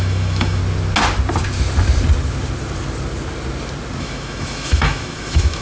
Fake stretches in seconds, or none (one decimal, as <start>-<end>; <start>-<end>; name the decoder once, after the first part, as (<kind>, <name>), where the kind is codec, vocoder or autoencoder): 0.0-0.6 (autoencoder, DAC-VAE); 4.0-5.6

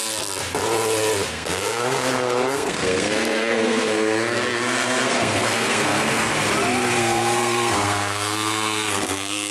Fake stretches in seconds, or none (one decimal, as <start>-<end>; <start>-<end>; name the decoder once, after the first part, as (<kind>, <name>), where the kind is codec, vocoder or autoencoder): 1.3-6.3 (codec, SNAC); 7.0-9.5

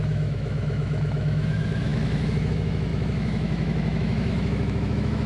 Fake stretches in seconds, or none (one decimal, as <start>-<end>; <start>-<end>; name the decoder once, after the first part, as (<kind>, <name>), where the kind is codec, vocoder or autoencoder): 0.0-5.3 (autoencoder, DAC-VAE)

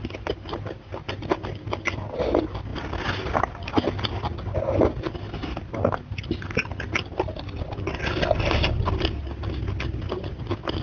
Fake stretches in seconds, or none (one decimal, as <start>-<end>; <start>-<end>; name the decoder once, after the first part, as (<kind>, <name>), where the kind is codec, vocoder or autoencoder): 2.7-3.3 (vocoder, BigVGAN v2)

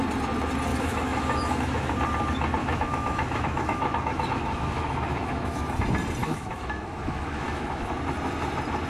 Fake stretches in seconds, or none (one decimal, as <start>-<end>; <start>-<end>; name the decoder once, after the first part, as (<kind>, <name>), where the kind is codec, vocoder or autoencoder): 0.7-1.9 (autoencoder, DAC-VAE); 2.6-5.7; 6.2-7.9

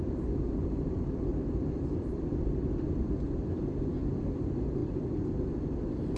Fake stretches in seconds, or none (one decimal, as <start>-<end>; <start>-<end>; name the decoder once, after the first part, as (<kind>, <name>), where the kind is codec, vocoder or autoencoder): 1.3-2.9 (vocoder, BigVGAN v2); 4.8-5.6

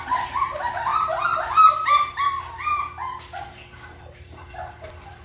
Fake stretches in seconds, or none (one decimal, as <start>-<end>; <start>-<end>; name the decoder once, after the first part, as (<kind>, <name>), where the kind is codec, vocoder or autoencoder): 0.0-0.9 (vocoder, BigVGAN v2); 4.0-5.2